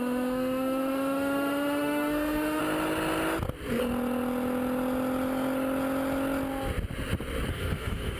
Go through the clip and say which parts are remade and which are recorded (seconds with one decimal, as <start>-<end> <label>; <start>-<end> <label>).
0.0-2.6 remade; 2.6-7.5 recorded; 7.5-8.2 remade